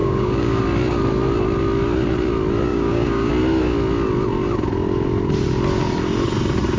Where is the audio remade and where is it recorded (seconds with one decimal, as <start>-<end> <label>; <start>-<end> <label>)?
0.0-0.6 remade; 0.6-2.7 recorded; 2.7-3.3 remade; 3.3-6.8 recorded

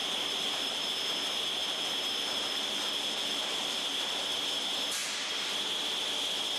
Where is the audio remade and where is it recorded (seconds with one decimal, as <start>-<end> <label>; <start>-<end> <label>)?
0.0-1.1 remade; 1.1-1.6 recorded; 1.6-4.1 remade; 4.1-6.6 recorded